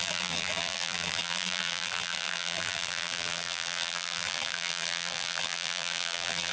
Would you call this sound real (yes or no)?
no